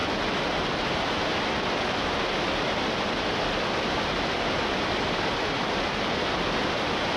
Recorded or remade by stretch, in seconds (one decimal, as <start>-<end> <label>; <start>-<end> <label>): 0.0-7.2 recorded